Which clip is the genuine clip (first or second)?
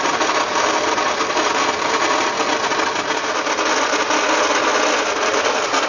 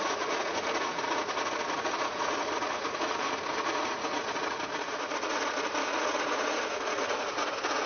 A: first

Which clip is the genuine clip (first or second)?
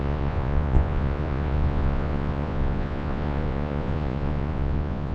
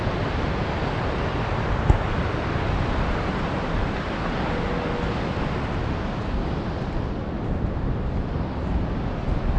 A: second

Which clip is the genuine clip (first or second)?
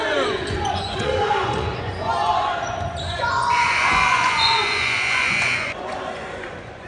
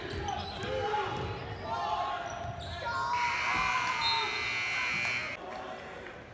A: second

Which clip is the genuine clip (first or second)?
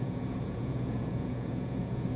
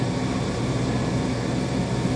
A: second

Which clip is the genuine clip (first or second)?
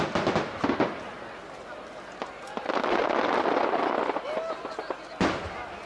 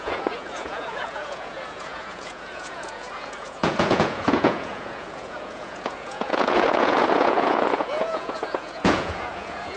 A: first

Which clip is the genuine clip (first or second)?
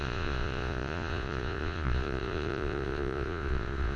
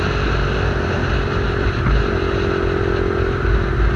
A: second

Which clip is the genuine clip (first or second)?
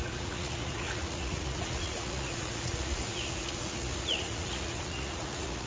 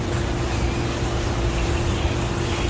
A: second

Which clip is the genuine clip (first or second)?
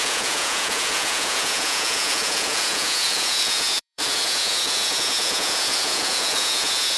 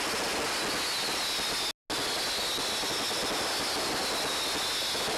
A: second